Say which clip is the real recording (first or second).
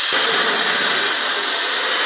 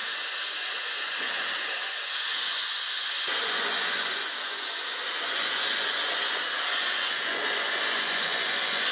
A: first